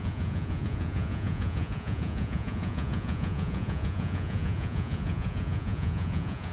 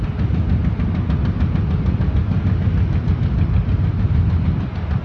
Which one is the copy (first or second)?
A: first